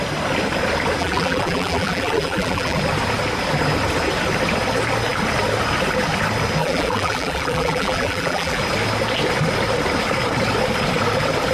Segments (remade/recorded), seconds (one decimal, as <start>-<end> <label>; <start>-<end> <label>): 0.0-1.0 recorded; 1.0-2.8 remade; 2.8-6.6 recorded; 6.6-8.6 remade; 8.6-11.5 recorded